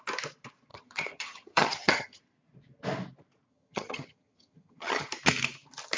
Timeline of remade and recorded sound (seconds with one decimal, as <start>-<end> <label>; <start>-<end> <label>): 0.0-0.7 recorded; 0.7-2.2 remade; 2.2-3.5 recorded; 3.5-5.1 remade; 5.1-6.0 recorded